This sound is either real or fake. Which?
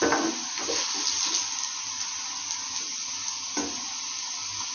real